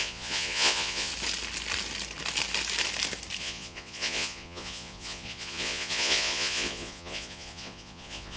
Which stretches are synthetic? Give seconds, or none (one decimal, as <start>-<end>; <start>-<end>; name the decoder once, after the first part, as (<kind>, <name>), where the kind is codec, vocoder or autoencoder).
0.0-1.1 (vocoder, Vocos); 3.4-8.4